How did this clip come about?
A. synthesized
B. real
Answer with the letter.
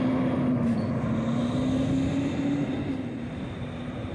B